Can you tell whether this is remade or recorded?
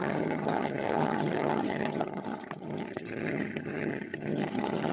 remade